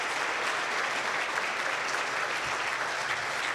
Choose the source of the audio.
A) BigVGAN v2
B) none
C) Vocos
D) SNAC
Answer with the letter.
B